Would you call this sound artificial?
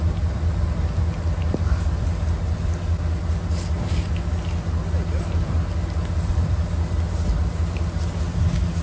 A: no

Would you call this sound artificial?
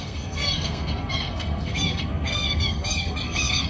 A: yes